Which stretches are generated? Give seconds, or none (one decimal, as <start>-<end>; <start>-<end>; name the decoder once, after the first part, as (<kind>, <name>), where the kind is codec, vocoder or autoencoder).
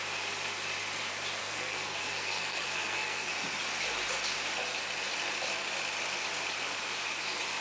1.4-3.3 (codec, SNAC)